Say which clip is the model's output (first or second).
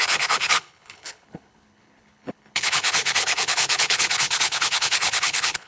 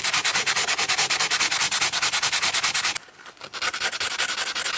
first